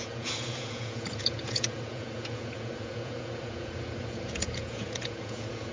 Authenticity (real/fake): fake